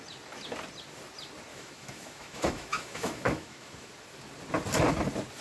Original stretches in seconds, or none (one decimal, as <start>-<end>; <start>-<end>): 0.0-1.5; 3.9-5.4